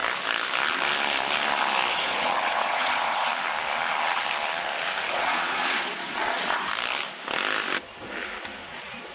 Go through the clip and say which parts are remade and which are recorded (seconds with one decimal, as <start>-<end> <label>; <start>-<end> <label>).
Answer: 0.0-1.9 recorded; 1.9-3.3 remade; 3.3-5.1 recorded; 5.1-6.7 remade; 6.7-8.7 recorded; 8.7-9.1 remade